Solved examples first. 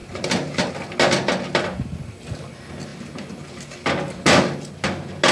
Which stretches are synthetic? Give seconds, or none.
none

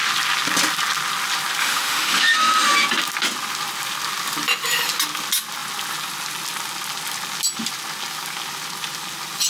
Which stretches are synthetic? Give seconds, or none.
1.6-2.2 (autoencoder, DAC-VAE)

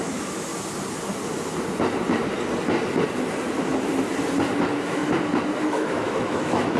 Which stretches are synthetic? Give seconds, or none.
0.0-0.5 (autoencoder, DAC-VAE); 4.6-5.0; 5.6-6.8

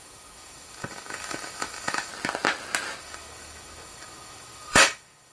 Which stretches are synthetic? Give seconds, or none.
0.0-2.1 (autoencoder, DAC-VAE); 3.0-5.3